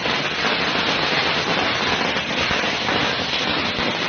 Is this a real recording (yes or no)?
yes